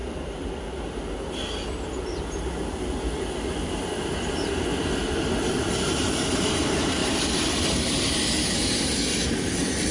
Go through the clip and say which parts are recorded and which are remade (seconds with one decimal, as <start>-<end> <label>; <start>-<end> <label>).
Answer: 0.0-2.2 recorded; 2.2-9.9 remade